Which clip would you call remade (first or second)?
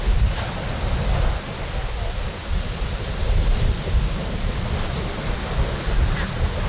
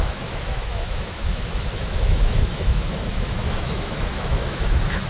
second